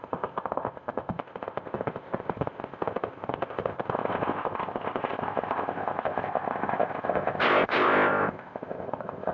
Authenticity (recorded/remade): remade